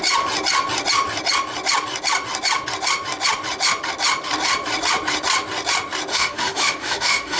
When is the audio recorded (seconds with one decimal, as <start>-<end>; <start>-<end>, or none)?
0.0-6.1